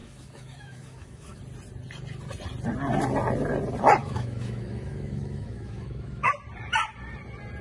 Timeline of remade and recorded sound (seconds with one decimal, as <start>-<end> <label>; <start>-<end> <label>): 0.0-1.4 remade; 1.4-4.0 recorded; 4.0-6.3 remade; 6.3-7.6 recorded

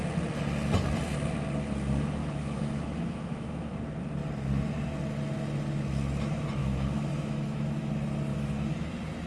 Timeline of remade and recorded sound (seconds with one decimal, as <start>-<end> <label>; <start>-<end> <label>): 0.0-2.2 recorded; 2.2-3.8 remade; 3.8-6.6 recorded; 6.6-7.9 remade; 7.9-8.3 recorded; 8.3-8.9 remade; 8.9-9.3 recorded